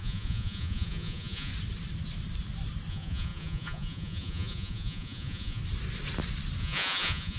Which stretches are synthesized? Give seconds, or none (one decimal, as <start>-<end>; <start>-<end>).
0.0-1.5; 2.9-5.6; 6.6-7.4